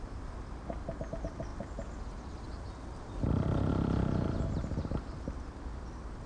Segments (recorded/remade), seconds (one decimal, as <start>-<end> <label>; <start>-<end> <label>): 0.0-6.3 recorded